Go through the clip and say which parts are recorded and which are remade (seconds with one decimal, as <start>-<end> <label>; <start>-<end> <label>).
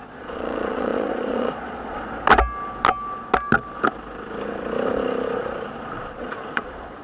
0.0-2.0 remade; 2.0-6.2 recorded; 6.2-7.0 remade